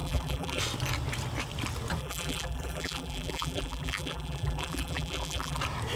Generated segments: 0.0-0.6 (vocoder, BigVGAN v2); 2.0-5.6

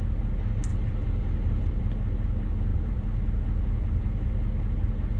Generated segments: 0.7-1.8 (vocoder, BigVGAN v2); 2.7-4.0

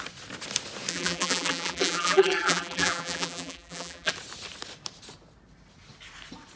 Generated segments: 0.9-4.1 (vocoder, BigVGAN v2)